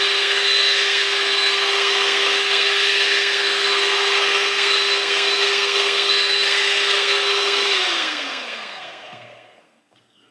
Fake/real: fake